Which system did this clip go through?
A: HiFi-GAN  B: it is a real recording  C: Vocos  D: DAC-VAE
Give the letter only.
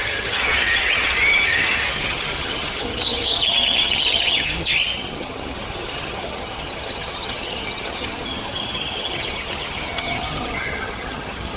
A